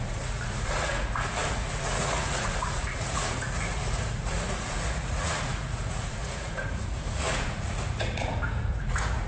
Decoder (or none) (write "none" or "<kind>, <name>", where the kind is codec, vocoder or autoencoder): vocoder, Vocos